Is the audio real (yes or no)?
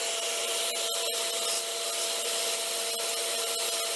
yes